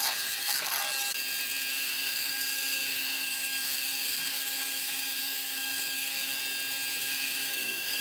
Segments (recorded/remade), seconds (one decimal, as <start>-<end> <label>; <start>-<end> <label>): 0.0-0.7 remade; 0.7-1.7 recorded; 1.7-6.4 remade; 6.4-7.0 recorded; 7.0-8.0 remade